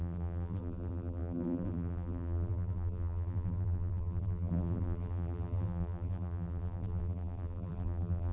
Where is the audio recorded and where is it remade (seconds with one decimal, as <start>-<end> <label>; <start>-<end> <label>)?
0.0-8.3 remade

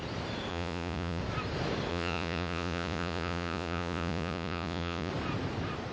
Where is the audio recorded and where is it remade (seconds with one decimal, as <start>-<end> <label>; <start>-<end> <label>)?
0.0-0.5 recorded; 0.5-1.2 remade; 1.2-1.9 recorded; 1.9-5.1 remade; 5.1-5.9 recorded

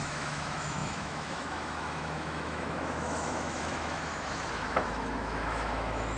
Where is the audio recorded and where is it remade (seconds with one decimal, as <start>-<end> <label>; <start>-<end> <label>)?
0.0-6.2 remade

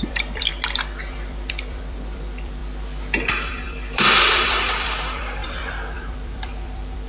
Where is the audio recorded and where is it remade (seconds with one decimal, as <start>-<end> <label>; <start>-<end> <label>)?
0.0-0.5 remade; 0.5-1.1 recorded; 1.1-2.6 remade; 2.6-3.3 recorded; 3.3-7.1 remade

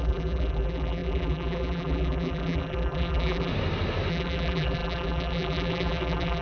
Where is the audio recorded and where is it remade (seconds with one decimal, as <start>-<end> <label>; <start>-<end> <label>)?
0.0-3.5 remade; 3.5-4.1 recorded; 4.1-6.4 remade

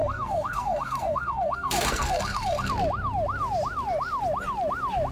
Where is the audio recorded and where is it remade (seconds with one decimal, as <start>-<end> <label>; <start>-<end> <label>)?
0.0-2.7 remade; 2.7-5.1 recorded

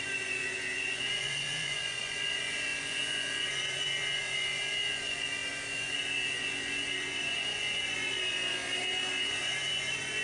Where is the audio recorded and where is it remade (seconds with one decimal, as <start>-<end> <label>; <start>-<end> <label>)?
0.0-10.2 remade

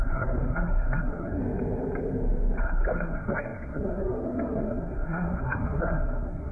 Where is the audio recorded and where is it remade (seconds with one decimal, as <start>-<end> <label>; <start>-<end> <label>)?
0.0-1.4 remade; 1.4-2.6 recorded; 2.6-6.5 remade